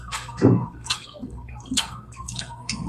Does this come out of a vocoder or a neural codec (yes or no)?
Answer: yes